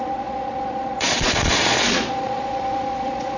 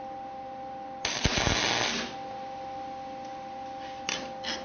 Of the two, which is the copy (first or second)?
first